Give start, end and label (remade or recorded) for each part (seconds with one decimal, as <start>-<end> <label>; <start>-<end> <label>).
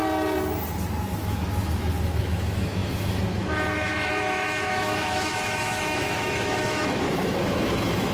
0.0-1.1 recorded; 1.1-8.1 remade